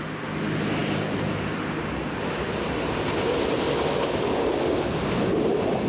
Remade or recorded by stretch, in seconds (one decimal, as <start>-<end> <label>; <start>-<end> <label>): 0.0-5.9 recorded